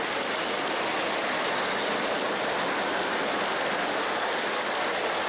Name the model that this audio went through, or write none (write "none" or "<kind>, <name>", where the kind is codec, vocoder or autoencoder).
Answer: none